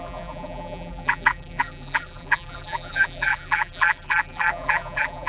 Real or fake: fake